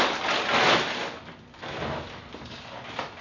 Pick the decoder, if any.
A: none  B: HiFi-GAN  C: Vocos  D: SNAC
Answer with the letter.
A